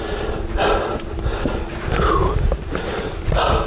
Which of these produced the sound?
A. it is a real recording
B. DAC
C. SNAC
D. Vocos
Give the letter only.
A